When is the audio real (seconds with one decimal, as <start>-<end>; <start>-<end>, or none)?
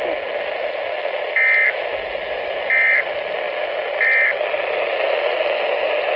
0.0-6.2